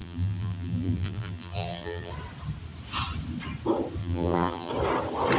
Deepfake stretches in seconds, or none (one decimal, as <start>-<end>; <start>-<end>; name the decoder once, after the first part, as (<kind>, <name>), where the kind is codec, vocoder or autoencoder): 0.0-2.1 (vocoder, BigVGAN v2); 4.0-4.7